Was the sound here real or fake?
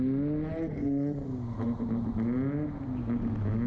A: real